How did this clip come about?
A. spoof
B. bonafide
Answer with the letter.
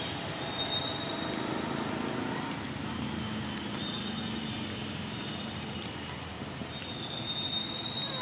B